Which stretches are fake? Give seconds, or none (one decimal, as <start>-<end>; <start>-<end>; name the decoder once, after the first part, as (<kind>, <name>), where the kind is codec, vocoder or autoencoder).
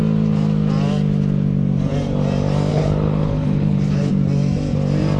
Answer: 2.7-4.1 (codec, HILCodec)